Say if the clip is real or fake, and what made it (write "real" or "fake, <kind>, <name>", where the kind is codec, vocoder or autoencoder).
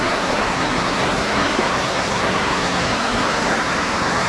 fake, codec, SNAC